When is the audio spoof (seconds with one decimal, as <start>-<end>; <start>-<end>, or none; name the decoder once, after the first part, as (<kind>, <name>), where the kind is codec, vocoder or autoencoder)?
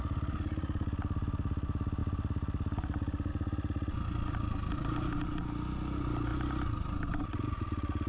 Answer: none